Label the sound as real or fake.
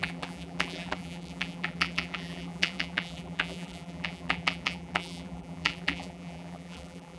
fake